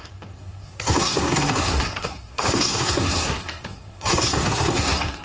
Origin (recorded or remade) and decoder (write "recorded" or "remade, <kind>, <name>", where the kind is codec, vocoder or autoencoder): remade, codec, SNAC